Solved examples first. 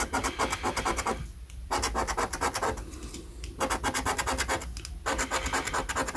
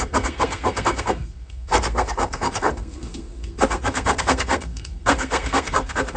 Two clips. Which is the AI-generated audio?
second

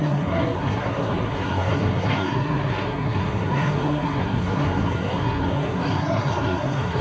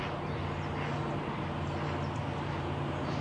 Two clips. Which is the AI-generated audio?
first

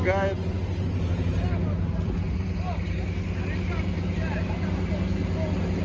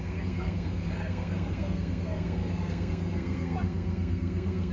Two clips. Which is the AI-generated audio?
second